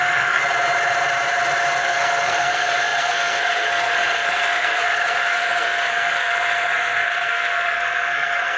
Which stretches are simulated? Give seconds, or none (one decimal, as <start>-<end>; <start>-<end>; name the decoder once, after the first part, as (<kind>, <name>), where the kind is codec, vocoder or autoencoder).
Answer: 0.0-0.4 (codec, SNAC); 1.8-8.6